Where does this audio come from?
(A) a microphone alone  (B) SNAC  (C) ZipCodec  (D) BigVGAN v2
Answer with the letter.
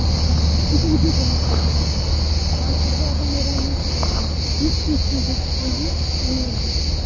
A